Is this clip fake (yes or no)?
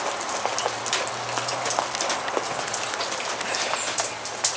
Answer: no